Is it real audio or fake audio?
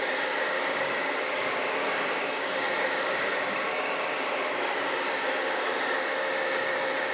fake